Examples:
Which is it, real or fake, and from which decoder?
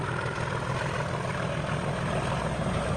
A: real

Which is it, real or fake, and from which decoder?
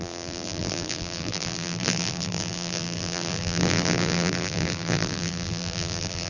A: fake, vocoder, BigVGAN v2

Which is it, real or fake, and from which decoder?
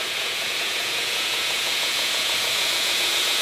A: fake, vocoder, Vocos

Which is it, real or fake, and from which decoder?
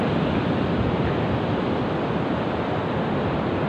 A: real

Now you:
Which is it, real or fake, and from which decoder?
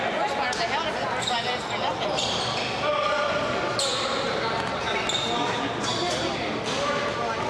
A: real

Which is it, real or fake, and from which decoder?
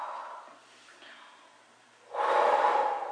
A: real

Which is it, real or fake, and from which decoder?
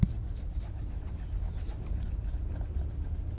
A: real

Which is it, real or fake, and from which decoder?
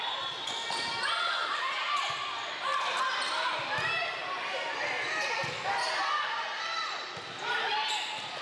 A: real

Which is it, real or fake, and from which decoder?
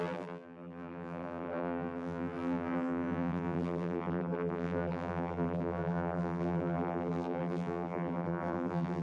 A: fake, vocoder, BigVGAN v2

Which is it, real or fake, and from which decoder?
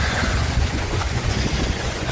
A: fake, vocoder, Vocos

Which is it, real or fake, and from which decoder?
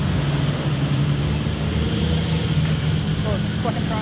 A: real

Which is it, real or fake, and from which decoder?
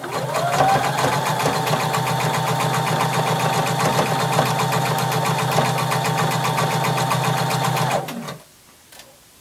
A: real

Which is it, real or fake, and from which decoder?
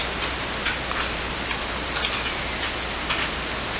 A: real